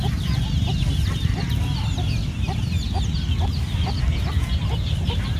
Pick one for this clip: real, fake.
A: real